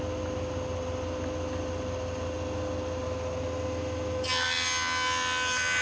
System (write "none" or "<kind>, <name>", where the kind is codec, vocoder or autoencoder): none